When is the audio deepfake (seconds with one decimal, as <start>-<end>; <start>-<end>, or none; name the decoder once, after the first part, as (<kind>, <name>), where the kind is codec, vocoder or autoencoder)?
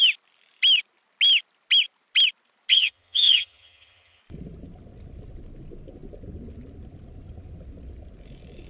2.7-4.2 (vocoder, HiFi-GAN)